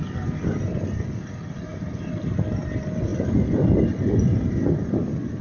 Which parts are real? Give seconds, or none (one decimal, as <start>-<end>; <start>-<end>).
0.0-5.4